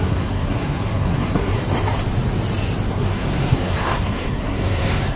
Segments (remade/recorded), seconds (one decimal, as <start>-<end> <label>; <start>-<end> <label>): 0.0-1.6 remade; 1.6-2.9 recorded; 2.9-5.2 remade